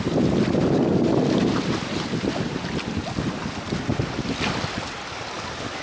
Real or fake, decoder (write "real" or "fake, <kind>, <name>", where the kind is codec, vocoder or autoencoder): real